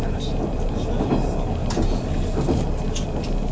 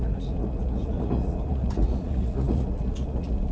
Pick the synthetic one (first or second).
second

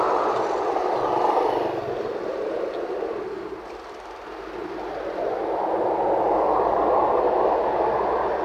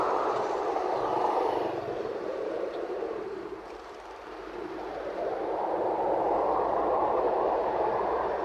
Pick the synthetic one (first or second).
second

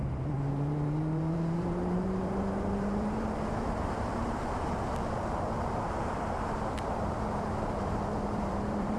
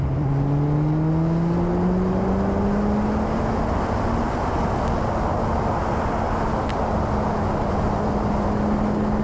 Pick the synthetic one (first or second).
first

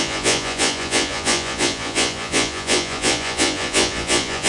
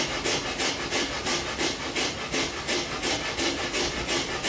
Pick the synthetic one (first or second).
first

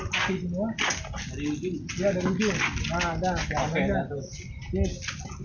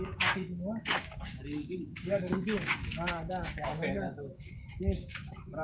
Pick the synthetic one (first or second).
second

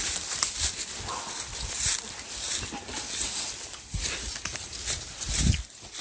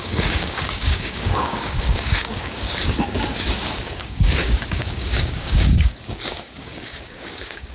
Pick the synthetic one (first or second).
second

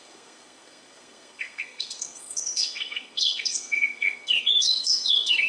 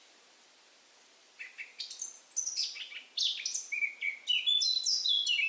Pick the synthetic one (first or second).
first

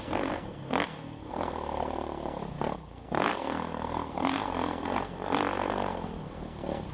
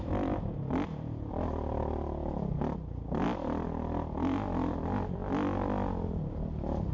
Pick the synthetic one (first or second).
first